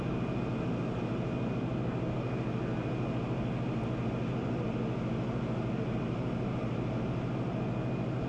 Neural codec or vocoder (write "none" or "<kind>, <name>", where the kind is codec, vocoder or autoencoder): none